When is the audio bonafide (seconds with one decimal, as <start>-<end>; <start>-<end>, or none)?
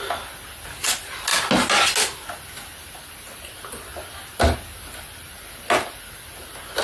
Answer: 0.0-6.8